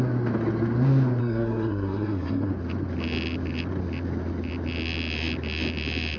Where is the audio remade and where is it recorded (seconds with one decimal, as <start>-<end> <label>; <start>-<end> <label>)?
0.0-1.2 recorded; 1.2-2.5 remade; 2.5-6.2 recorded